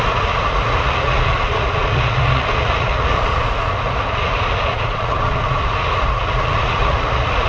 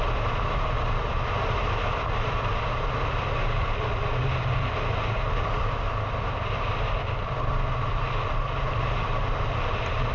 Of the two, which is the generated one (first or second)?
first